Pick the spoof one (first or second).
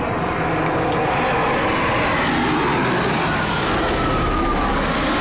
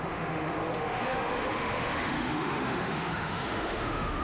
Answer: second